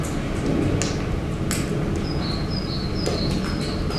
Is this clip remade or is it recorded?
recorded